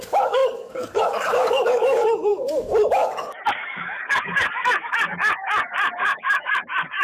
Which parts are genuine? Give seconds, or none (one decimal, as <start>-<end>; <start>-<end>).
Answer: none